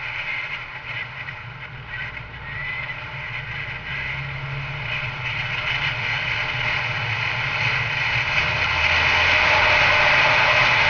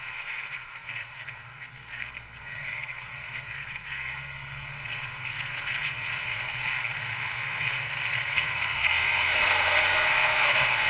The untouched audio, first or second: first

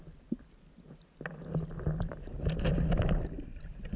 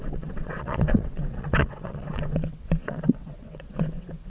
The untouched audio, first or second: first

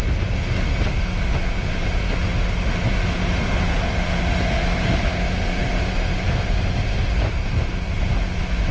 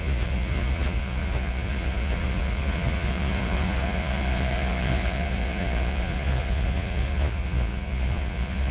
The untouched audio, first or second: first